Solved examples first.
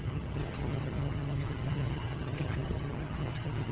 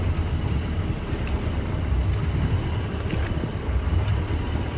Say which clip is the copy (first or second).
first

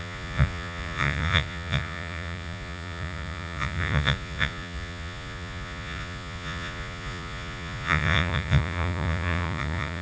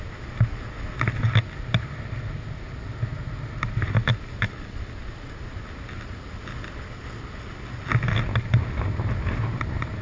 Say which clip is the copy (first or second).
first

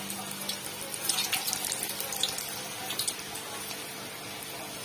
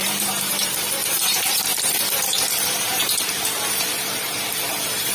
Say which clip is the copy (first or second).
second